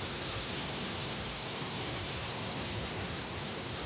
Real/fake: fake